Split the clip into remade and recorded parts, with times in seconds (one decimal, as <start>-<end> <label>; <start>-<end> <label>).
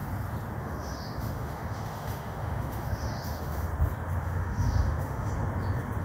0.0-0.6 recorded; 0.6-3.7 remade; 3.7-4.2 recorded; 4.2-5.3 remade; 5.3-6.0 recorded